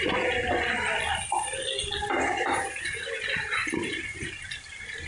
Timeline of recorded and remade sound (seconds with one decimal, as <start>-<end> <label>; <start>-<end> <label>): 0.0-2.0 recorded; 2.0-4.3 remade; 4.3-5.1 recorded